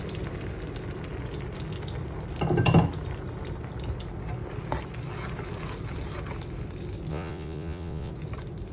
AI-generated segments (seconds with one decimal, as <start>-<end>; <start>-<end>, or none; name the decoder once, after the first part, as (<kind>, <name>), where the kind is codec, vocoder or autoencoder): 7.1-8.1 (vocoder, Vocos)